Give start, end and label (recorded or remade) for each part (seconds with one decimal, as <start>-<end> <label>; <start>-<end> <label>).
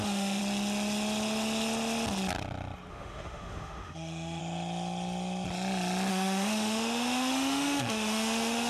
0.0-0.4 remade; 0.4-2.9 recorded; 2.9-4.4 remade; 4.4-6.1 recorded; 6.1-8.7 remade